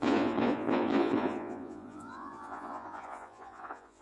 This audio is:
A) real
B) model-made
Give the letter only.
B